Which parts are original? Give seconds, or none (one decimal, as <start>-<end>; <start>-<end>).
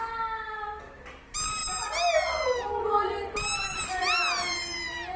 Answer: 0.0-5.2